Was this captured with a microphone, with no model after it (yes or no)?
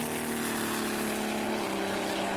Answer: yes